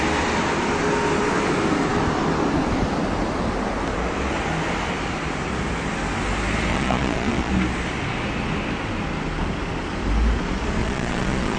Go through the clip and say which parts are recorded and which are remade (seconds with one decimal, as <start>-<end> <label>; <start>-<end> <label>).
0.0-6.7 recorded; 6.7-7.5 remade; 7.5-10.8 recorded; 10.8-11.6 remade